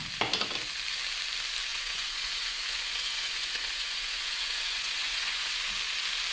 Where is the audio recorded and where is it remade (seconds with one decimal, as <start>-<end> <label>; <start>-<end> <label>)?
0.0-1.7 recorded; 1.7-5.5 remade; 5.5-6.3 recorded